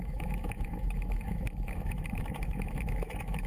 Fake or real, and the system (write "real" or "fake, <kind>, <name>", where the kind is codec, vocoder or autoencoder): fake, autoencoder, DAC-VAE